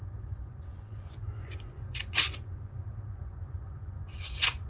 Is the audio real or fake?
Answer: fake